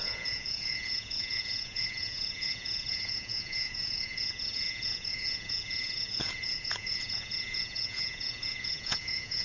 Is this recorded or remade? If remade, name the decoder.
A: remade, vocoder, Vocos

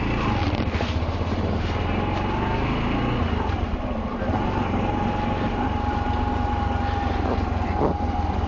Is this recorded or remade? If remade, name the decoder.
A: recorded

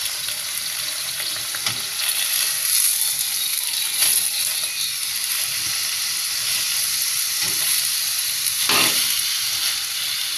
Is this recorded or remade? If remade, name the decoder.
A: recorded